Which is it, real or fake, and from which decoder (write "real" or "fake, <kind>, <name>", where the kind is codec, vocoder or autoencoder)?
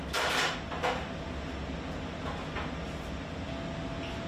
real